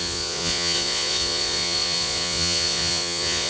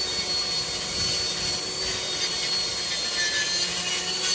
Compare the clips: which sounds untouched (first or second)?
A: second